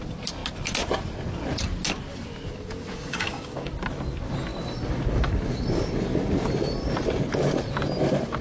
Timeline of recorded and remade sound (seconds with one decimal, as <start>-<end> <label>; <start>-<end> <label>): 0.0-2.9 recorded; 2.9-3.7 remade; 3.7-8.4 recorded